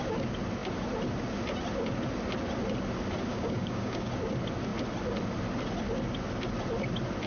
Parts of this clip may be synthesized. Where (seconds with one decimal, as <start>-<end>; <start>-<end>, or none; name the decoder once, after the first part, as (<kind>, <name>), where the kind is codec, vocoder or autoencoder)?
3.3-4.1 (codec, DAC)